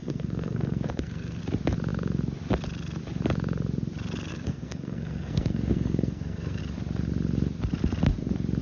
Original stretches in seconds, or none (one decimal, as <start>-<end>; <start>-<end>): 1.4-4.3; 6.6-8.6